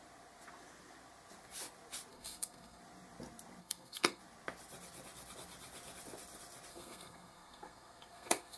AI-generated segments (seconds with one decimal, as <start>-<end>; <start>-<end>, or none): 2.1-2.8; 3.6-4.2; 6.7-8.6